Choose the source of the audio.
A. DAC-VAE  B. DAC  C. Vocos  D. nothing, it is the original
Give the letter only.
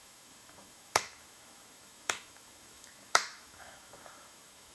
A